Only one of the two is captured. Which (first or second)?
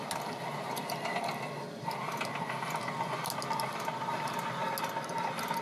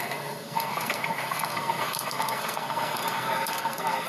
first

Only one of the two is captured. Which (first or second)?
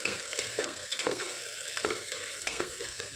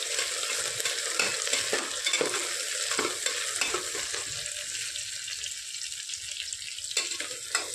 second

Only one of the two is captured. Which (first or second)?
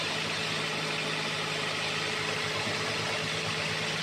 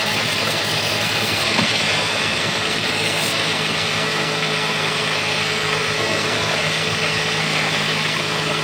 first